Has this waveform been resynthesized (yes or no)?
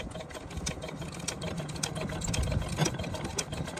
no